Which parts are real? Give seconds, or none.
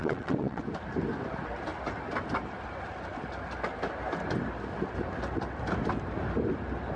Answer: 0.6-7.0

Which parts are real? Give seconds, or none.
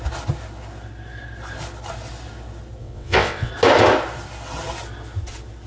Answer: 0.0-2.8; 3.5-5.7